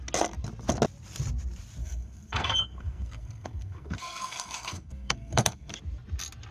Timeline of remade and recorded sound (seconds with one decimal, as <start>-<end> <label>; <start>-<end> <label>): 0.0-1.8 recorded; 1.8-5.7 remade; 5.7-6.5 recorded